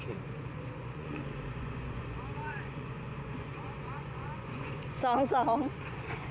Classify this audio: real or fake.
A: fake